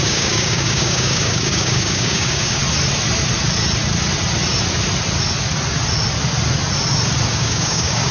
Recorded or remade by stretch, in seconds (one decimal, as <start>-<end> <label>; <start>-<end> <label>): 0.0-2.6 remade; 2.6-7.3 recorded; 7.3-8.1 remade